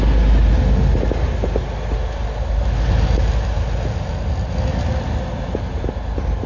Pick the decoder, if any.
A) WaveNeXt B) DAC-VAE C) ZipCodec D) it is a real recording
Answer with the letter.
D